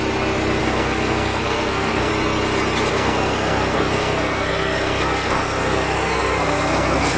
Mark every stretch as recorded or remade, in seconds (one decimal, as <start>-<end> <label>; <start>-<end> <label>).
0.0-0.6 recorded; 0.6-2.1 remade; 2.1-2.9 recorded; 2.9-7.2 remade